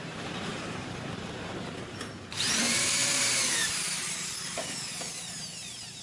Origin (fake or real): fake